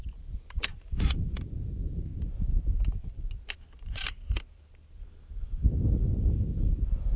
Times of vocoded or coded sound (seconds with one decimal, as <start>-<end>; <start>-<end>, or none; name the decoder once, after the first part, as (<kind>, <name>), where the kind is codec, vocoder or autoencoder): 0.0-0.7 (vocoder, BigVGAN v2); 1.3-2.1; 6.1-7.2